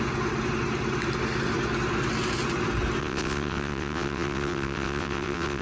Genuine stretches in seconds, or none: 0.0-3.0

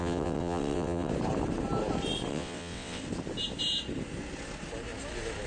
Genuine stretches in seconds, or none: 1.1-2.3; 3.0-5.5